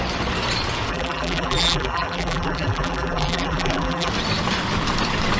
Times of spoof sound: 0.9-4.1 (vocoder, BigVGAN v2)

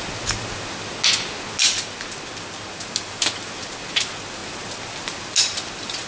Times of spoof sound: none